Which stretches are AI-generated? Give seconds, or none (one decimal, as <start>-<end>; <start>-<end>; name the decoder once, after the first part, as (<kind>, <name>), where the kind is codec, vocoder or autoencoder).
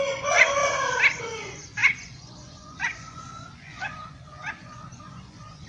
0.0-0.6 (vocoder, Vocos); 1.2-5.7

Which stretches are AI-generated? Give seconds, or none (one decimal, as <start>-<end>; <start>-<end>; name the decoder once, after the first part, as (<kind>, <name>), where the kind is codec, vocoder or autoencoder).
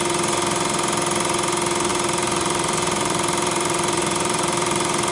1.9-5.1 (vocoder, BigVGAN v2)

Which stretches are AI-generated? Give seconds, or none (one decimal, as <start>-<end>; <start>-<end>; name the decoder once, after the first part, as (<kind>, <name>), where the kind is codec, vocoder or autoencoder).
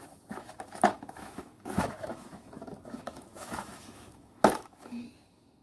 0.0-5.6 (autoencoder, DAC-VAE)